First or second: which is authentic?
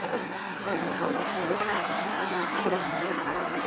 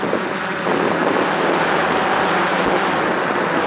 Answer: second